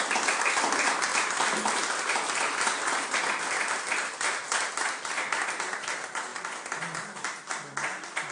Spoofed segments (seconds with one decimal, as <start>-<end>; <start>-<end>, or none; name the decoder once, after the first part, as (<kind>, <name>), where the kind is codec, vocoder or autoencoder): none